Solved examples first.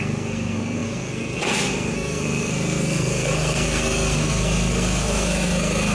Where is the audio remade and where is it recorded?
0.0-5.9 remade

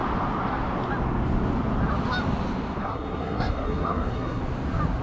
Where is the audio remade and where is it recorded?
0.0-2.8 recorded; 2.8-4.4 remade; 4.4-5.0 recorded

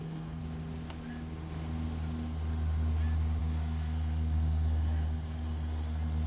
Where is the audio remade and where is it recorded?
0.0-0.4 remade; 0.4-3.4 recorded; 3.4-6.3 remade

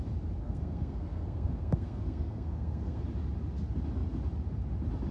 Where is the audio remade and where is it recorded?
0.0-0.4 recorded; 0.4-3.0 remade; 3.0-5.1 recorded